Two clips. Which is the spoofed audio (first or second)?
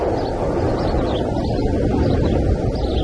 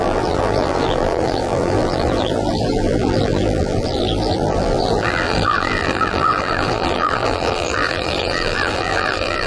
second